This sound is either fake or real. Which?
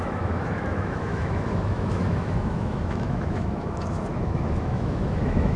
fake